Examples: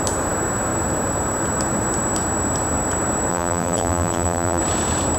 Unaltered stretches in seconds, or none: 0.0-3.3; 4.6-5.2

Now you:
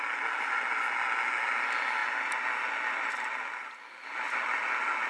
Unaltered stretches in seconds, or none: 0.0-2.0

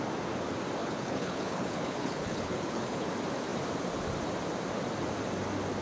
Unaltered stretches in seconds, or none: 0.0-0.8; 3.1-5.8